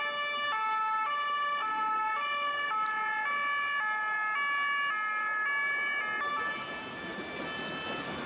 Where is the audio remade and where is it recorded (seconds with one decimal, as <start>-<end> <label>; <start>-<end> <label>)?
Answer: 0.0-8.3 recorded